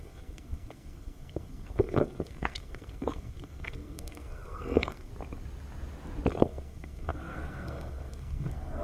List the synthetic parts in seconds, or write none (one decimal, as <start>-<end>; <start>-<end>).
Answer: 0.0-5.1; 6.3-8.8